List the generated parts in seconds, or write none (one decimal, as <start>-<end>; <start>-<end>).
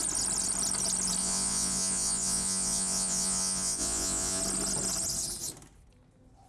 1.2-4.4